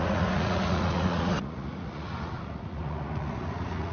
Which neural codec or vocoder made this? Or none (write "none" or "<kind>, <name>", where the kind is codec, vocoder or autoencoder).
vocoder, Vocos